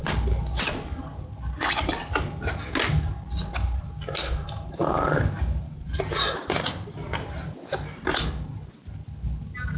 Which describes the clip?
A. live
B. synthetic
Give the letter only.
A